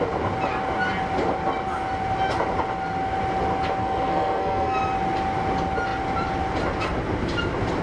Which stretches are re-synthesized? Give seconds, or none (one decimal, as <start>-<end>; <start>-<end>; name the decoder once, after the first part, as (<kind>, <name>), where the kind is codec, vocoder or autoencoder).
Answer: 3.8-4.8 (codec, SNAC)